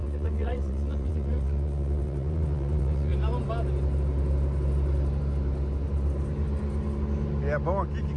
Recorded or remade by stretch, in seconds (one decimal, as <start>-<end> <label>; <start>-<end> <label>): 0.0-3.1 remade; 3.1-8.2 recorded